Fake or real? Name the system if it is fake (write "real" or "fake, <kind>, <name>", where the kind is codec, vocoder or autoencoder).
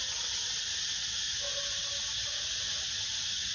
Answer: real